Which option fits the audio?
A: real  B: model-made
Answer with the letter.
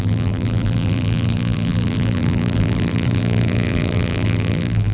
B